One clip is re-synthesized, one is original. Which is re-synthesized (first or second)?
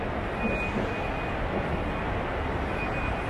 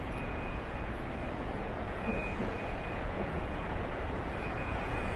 second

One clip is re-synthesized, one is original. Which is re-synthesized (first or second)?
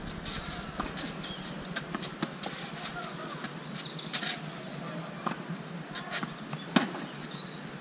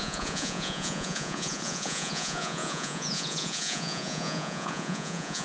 second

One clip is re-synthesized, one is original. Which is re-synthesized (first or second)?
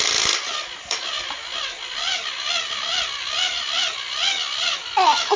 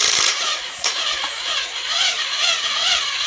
second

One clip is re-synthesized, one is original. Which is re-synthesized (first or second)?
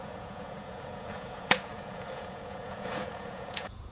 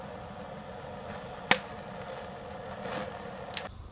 first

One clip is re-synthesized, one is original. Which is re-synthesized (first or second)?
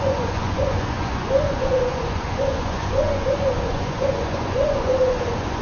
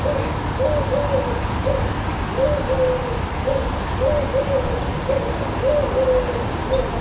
first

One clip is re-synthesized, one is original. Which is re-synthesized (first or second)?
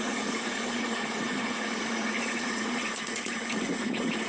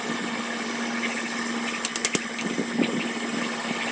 first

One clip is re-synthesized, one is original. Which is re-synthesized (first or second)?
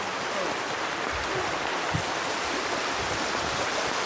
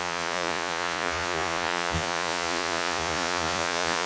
second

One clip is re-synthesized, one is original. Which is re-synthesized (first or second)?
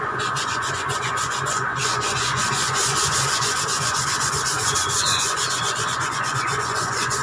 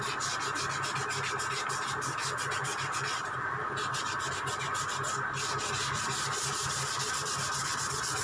first